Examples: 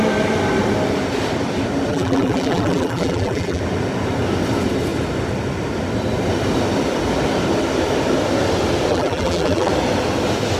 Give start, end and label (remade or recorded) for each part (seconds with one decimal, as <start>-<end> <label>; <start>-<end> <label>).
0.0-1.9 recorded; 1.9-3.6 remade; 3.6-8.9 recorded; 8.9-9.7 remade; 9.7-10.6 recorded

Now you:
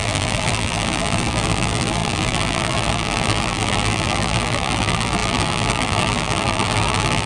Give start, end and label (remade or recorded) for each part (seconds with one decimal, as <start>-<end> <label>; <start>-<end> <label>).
0.0-7.3 remade

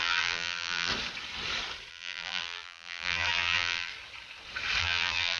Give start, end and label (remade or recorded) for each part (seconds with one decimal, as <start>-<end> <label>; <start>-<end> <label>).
0.0-0.9 remade; 0.9-1.9 recorded; 1.9-3.9 remade; 3.9-4.8 recorded; 4.8-5.4 remade

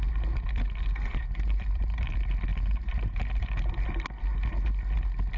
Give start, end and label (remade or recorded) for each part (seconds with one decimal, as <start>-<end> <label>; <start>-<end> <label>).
0.0-1.1 recorded; 1.1-2.1 remade; 2.1-2.5 recorded; 2.5-3.7 remade; 3.7-5.4 recorded

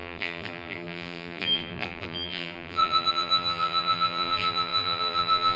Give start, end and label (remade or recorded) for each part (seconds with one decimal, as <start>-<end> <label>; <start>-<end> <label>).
0.0-5.6 remade